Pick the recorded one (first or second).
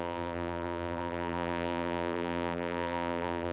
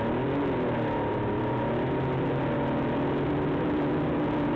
second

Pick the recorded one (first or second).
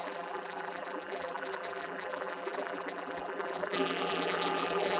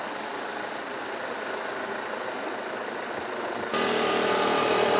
second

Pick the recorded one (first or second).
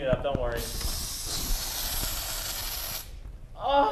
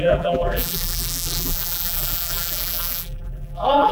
first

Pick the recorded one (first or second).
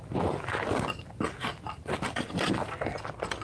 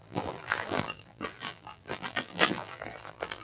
first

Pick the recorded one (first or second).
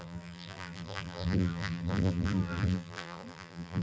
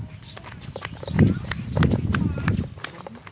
second